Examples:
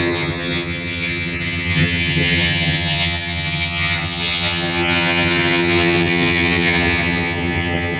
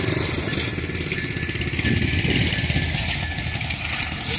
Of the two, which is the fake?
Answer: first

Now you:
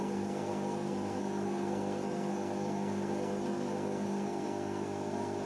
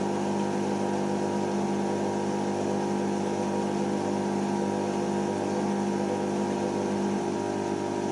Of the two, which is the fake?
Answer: first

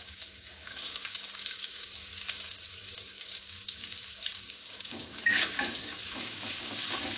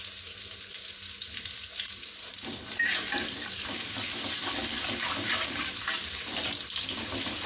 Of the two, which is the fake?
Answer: first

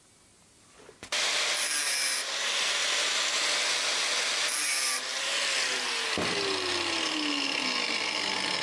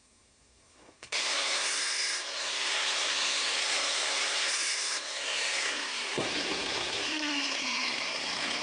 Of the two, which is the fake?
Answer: second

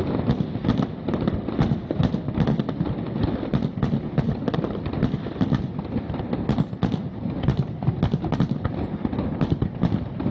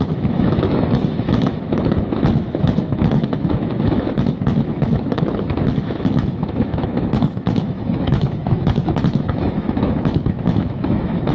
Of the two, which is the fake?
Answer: second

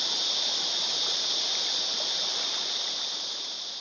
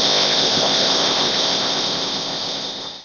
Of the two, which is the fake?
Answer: second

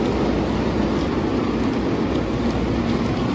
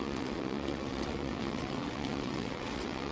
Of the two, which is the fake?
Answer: second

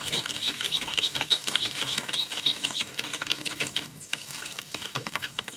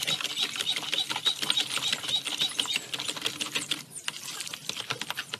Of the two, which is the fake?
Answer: first